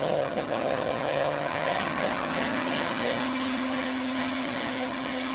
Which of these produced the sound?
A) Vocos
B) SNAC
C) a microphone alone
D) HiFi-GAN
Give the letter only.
D